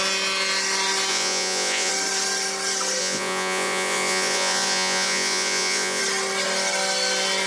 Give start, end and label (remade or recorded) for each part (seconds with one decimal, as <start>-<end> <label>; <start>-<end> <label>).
0.0-1.1 recorded; 1.1-1.9 remade; 1.9-3.0 recorded; 3.0-6.0 remade; 6.0-7.5 recorded